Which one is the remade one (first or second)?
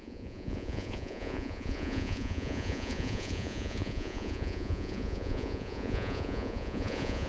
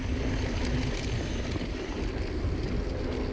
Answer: first